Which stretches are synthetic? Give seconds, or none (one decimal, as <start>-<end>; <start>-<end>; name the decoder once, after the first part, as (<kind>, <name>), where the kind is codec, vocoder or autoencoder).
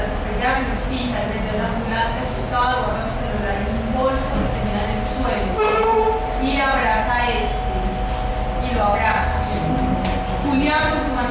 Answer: 1.9-2.4 (autoencoder, DAC-VAE)